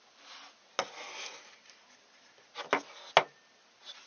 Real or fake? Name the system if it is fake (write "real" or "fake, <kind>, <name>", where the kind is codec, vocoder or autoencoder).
real